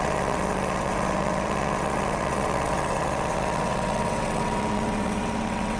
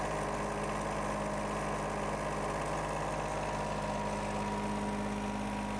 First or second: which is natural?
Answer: second